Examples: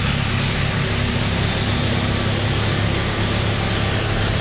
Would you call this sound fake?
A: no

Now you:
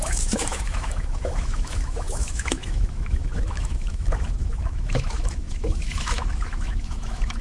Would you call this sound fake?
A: yes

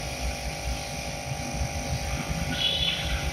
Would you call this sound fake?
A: no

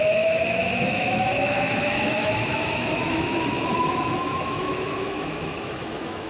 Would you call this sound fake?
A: yes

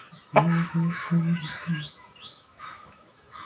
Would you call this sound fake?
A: yes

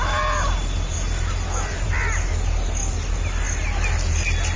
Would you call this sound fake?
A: no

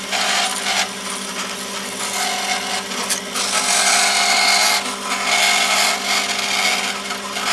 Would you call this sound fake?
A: no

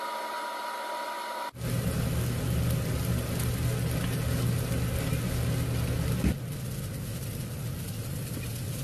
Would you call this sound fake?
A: no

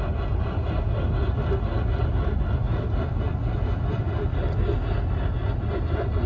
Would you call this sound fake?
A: no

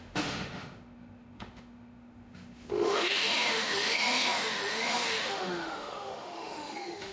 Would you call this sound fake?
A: yes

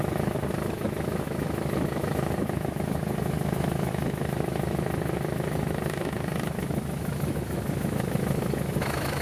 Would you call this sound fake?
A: yes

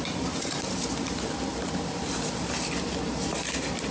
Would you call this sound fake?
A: no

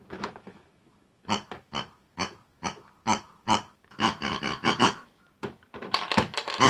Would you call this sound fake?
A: yes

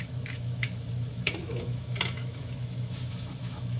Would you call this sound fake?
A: yes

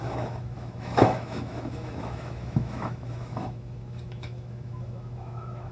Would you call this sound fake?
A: yes